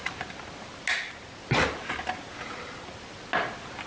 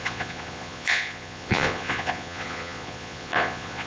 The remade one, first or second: second